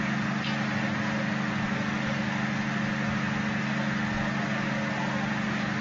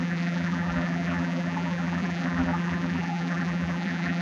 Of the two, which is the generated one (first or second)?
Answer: second